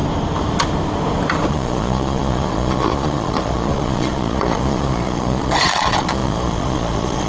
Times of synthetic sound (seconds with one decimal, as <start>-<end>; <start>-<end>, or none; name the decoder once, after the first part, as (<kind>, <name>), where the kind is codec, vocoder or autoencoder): 1.5-7.3 (vocoder, Vocos)